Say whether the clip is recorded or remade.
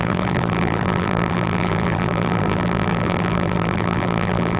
remade